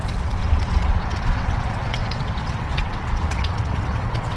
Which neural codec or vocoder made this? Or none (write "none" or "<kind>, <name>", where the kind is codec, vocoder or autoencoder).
vocoder, WaveNeXt